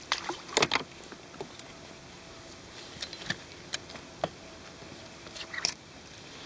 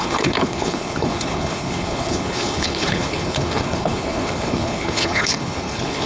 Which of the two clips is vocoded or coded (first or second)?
second